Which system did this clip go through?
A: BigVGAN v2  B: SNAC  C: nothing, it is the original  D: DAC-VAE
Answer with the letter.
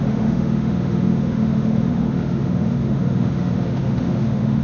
D